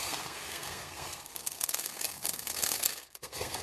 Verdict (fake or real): fake